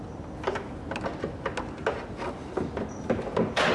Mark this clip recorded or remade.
recorded